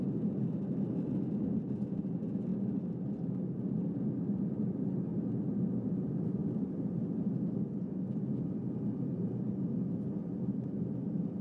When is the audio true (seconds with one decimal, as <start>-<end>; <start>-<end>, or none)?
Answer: 0.0-11.4